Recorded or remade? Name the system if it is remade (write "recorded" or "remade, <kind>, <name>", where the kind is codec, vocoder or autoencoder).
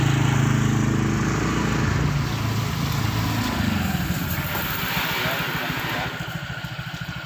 recorded